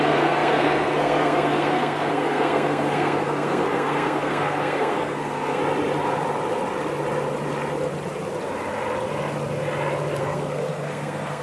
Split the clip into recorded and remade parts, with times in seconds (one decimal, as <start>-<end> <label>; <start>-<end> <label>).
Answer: 0.0-5.6 remade; 5.6-10.2 recorded; 10.2-11.4 remade